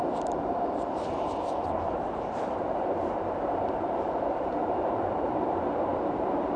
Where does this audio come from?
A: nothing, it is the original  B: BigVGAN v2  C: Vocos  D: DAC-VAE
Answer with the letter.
B